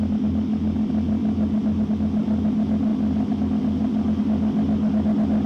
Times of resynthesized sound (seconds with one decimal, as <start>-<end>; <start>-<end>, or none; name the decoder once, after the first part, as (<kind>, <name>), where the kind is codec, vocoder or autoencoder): none